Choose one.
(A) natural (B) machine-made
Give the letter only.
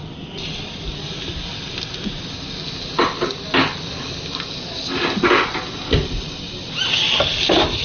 A